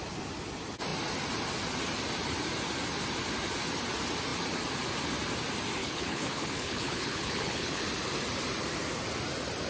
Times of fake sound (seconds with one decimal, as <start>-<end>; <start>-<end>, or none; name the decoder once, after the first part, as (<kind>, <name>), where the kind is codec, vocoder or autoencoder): 5.8-7.8 (codec, HILCodec)